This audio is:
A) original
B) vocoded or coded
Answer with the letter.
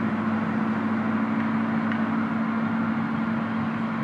A